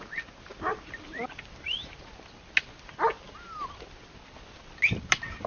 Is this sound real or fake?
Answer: real